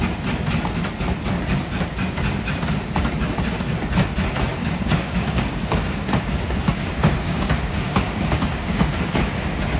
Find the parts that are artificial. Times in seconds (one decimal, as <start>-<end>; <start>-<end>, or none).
4.5-9.1